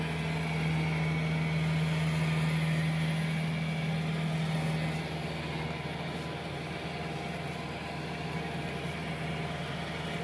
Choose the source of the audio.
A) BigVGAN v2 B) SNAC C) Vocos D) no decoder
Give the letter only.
D